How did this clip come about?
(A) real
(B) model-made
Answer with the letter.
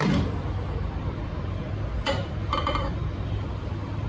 B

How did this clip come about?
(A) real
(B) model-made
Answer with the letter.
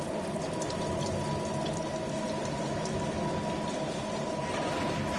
A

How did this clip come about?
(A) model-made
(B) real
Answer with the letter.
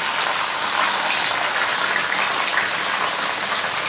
B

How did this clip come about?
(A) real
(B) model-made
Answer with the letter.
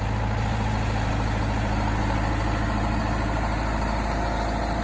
A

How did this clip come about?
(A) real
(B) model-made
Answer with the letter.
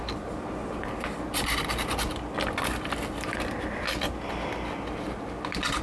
A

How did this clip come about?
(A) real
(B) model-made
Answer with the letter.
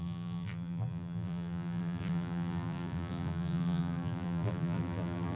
B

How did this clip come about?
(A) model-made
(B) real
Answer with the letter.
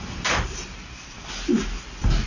B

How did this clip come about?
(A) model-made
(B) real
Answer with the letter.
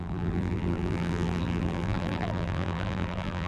A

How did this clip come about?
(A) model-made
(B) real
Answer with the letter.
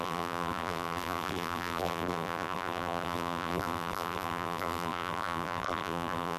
A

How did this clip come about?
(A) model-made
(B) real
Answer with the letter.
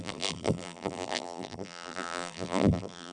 A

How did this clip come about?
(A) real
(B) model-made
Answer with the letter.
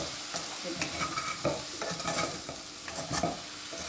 A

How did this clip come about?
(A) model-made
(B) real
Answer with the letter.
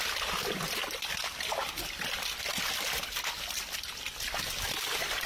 B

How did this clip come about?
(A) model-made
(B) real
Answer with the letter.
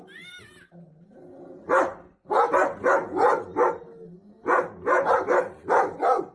B